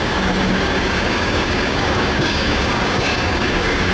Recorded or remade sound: remade